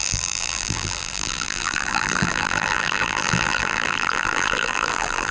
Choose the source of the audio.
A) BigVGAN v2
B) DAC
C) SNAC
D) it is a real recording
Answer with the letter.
A